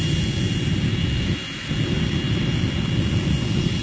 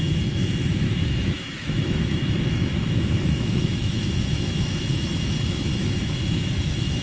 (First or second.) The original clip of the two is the first